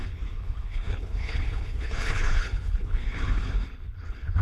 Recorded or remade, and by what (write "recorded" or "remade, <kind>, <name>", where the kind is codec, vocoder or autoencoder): remade, codec, HILCodec